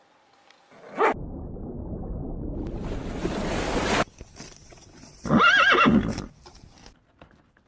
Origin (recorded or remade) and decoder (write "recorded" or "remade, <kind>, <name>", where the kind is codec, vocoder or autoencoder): recorded